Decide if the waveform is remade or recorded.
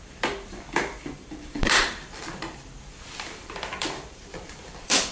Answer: remade